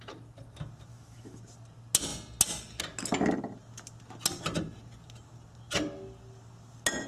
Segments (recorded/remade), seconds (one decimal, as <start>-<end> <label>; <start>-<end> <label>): 0.0-0.9 recorded; 0.9-1.4 remade; 1.4-7.1 recorded